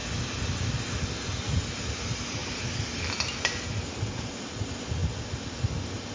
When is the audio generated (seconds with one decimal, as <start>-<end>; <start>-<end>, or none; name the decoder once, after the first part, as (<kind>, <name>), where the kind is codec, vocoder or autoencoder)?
5.0-5.6 (vocoder, BigVGAN v2)